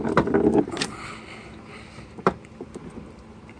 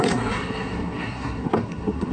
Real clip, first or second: first